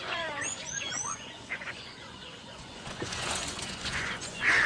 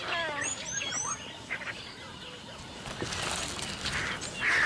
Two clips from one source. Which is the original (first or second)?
second